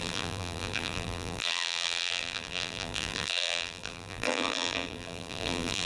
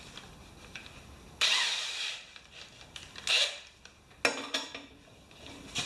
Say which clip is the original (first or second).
second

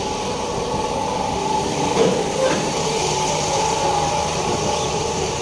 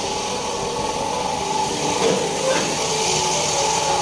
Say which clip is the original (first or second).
second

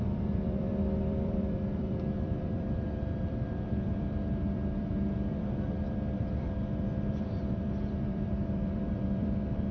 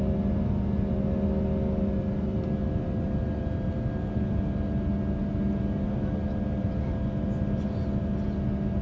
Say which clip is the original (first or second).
second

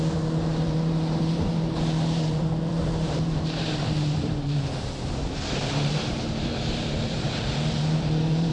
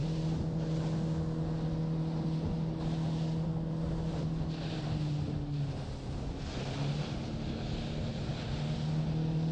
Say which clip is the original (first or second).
second